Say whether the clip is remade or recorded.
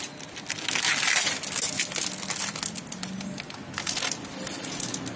recorded